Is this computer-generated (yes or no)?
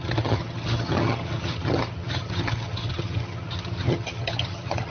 yes